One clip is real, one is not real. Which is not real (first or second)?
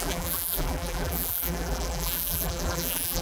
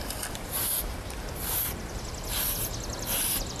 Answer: first